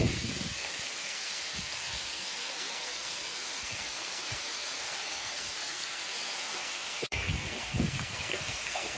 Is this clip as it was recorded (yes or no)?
no